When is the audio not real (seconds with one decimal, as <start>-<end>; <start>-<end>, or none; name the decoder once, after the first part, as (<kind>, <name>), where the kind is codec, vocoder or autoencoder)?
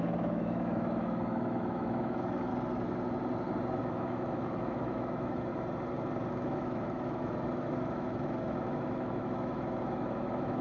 0.0-2.5 (autoencoder, DAC-VAE); 3.8-5.5; 6.3-10.6